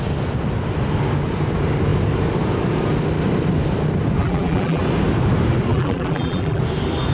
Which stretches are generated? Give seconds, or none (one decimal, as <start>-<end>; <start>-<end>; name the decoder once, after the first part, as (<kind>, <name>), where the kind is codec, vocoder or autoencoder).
4.2-4.8 (vocoder, BigVGAN v2); 5.7-6.6